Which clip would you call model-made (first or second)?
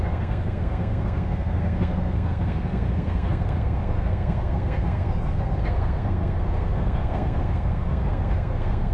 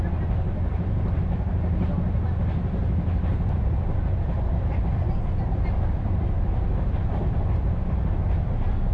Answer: first